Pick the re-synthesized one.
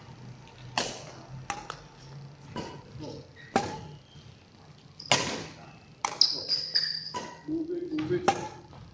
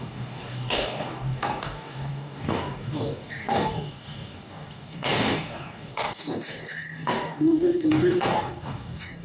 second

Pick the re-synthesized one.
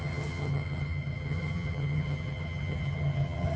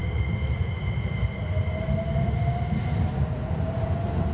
first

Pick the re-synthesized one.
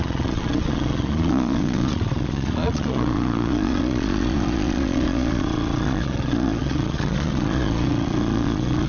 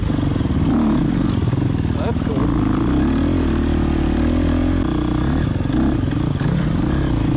first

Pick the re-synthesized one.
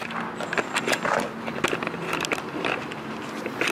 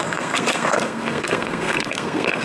second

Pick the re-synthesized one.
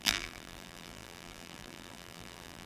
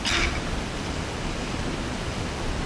first